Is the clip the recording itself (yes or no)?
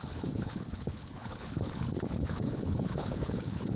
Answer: no